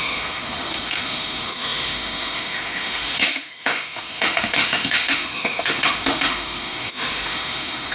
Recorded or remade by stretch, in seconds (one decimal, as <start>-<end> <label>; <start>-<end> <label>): 0.0-7.9 remade

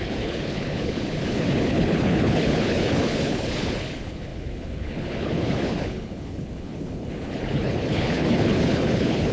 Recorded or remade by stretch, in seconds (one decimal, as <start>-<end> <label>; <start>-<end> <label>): 0.0-9.3 remade

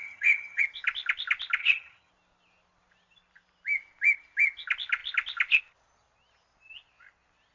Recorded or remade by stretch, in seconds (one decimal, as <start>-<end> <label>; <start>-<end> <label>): 0.0-0.6 remade; 0.6-1.6 recorded; 1.6-2.1 remade; 2.1-7.5 recorded